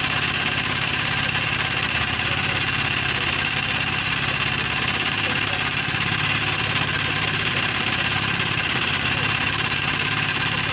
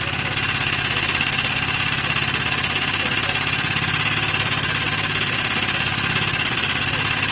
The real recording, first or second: second